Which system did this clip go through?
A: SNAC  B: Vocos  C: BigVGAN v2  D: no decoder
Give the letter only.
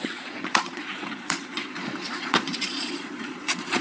B